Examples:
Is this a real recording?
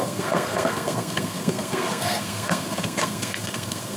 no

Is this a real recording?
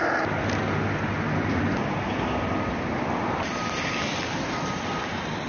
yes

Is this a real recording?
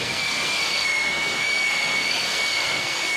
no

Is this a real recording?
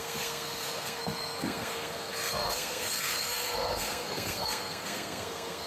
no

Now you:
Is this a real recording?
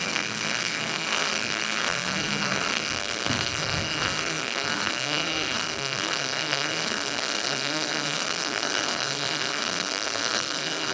no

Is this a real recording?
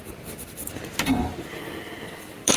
yes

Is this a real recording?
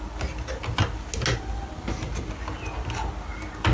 yes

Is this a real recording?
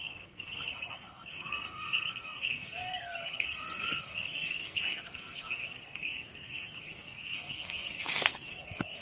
no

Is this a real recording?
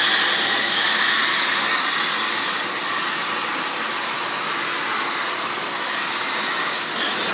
yes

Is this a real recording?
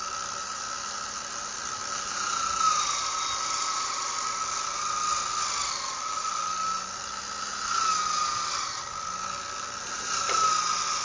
yes